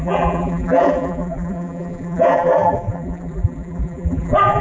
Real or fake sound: fake